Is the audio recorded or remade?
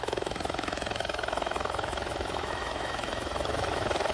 remade